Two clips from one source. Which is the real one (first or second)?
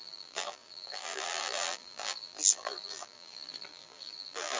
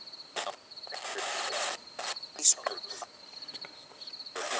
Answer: second